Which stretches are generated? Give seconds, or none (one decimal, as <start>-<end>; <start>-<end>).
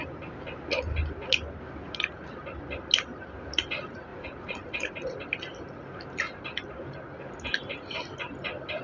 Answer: 4.1-4.9